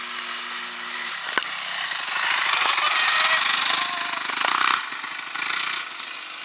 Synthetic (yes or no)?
no